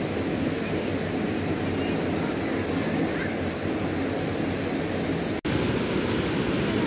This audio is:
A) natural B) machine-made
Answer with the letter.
A